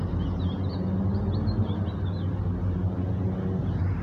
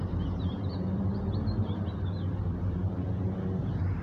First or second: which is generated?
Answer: second